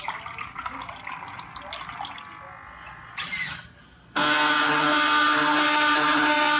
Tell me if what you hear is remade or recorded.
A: recorded